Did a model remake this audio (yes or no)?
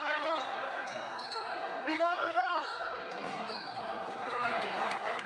yes